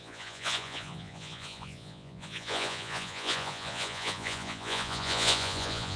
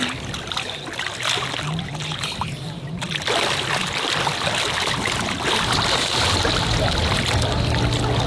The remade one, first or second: first